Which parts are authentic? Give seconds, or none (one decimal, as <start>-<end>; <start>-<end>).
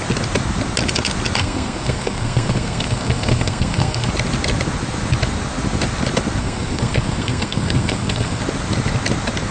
0.0-1.4; 4.1-6.4; 8.4-9.5